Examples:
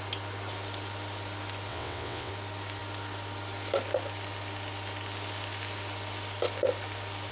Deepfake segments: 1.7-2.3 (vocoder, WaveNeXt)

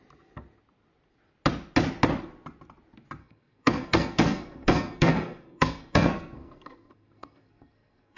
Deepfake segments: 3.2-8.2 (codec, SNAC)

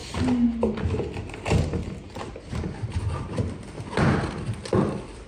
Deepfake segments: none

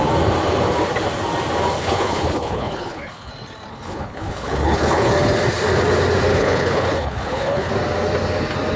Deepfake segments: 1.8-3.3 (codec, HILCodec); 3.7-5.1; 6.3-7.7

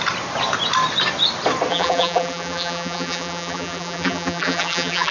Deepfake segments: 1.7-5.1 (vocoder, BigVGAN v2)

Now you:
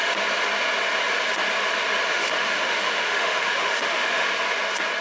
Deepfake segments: 2.1-4.3 (autoencoder, DAC-VAE)